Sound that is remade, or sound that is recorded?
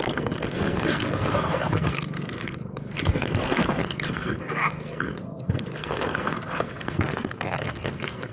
remade